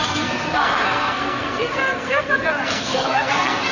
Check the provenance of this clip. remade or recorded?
remade